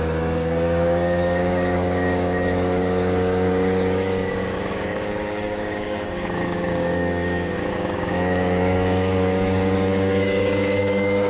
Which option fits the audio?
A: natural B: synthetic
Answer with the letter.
B